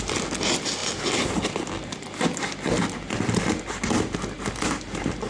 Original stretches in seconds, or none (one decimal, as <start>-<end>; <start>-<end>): 0.0-5.3